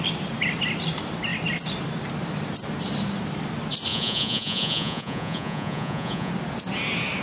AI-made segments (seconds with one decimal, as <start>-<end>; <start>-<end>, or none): 3.9-6.3